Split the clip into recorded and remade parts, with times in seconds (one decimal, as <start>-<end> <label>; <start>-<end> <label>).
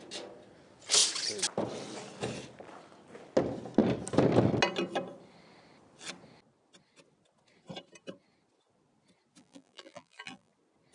0.0-9.4 recorded; 9.4-10.5 remade; 10.5-10.9 recorded